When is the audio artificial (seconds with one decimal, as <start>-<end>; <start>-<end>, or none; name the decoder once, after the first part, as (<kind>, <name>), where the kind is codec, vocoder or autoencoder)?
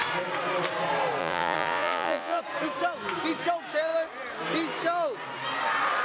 1.2-2.4 (vocoder, Vocos)